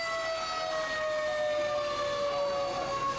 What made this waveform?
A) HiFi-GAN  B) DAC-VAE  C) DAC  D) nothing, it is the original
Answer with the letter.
D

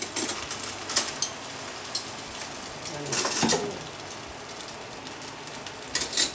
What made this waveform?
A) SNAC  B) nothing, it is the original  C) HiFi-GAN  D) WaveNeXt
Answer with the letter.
B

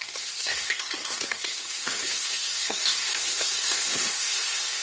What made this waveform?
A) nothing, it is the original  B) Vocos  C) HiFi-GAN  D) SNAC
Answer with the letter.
D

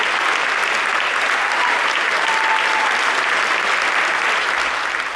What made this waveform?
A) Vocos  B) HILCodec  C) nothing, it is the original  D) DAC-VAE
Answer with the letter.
C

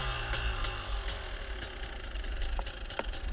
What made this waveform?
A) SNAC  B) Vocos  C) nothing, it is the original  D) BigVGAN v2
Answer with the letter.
C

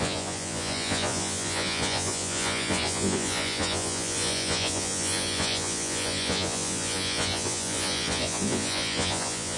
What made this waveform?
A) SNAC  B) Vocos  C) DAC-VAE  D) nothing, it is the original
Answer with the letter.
B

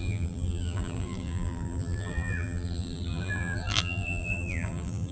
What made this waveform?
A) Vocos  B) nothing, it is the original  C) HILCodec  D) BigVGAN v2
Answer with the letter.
D